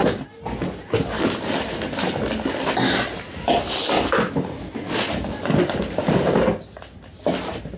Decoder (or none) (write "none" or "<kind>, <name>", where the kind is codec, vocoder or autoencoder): none